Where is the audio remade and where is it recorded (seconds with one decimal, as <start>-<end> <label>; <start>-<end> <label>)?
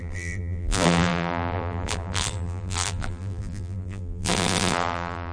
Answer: 0.0-5.3 remade